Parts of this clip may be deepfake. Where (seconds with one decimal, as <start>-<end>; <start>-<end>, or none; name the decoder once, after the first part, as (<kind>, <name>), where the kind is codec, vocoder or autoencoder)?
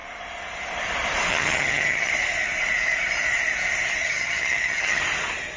1.3-2.1 (vocoder, HiFi-GAN); 4.0-5.0